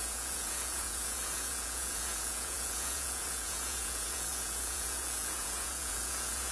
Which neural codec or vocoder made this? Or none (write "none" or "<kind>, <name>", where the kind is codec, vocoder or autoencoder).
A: vocoder, Vocos